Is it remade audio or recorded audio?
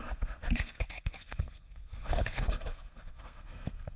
remade